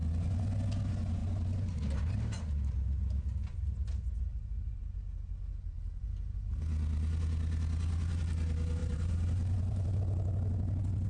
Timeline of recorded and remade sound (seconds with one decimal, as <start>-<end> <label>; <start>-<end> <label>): 0.0-1.2 recorded; 1.2-4.7 remade; 4.7-8.8 recorded; 8.8-10.0 remade; 10.0-11.1 recorded